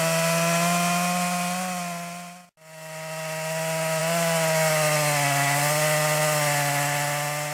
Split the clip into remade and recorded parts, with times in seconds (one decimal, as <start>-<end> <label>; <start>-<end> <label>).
0.0-7.5 recorded